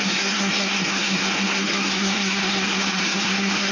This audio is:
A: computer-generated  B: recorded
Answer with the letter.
A